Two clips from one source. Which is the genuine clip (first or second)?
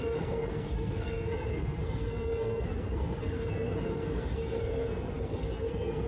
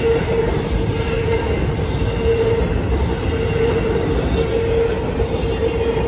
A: second